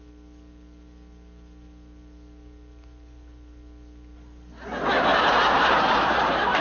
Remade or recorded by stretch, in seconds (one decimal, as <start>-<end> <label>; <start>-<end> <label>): 0.0-5.1 recorded; 5.1-6.6 remade